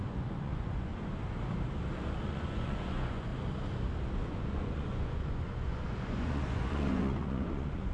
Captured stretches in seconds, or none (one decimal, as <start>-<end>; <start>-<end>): 0.9-2.2; 3.3-4.2